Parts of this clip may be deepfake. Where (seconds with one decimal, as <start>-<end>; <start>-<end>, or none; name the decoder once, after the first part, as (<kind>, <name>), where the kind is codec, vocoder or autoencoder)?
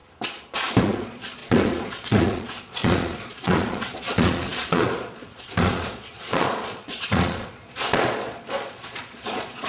0.8-9.7 (vocoder, Vocos)